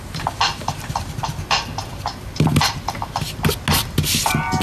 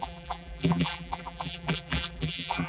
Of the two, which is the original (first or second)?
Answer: first